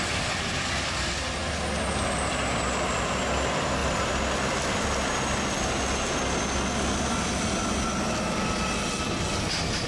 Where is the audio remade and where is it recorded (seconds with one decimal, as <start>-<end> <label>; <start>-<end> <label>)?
0.0-3.8 recorded; 3.8-4.9 remade; 4.9-9.9 recorded